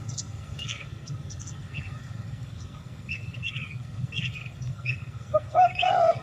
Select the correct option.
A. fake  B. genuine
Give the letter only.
A